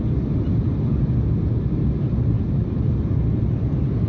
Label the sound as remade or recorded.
recorded